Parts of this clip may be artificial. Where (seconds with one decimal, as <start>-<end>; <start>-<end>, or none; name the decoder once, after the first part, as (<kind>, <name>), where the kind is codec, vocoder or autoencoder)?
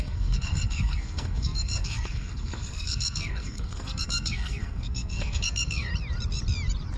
0.0-5.9 (codec, SNAC)